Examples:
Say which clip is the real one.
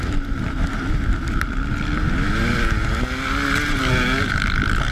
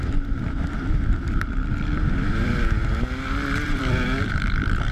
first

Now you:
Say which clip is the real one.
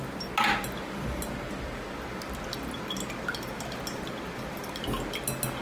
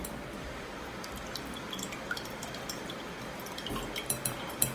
first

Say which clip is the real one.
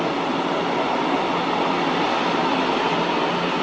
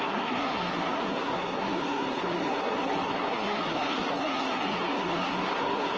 first